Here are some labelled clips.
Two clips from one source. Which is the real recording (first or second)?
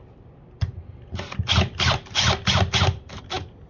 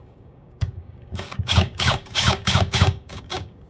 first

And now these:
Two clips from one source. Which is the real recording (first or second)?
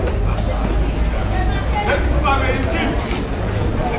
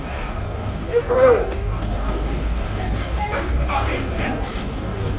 first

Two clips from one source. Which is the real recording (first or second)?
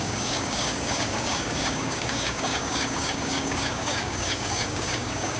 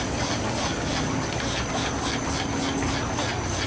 second